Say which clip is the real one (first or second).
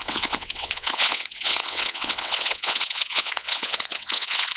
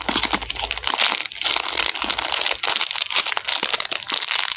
second